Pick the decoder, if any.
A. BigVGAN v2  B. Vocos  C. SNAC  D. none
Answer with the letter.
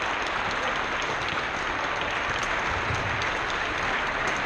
D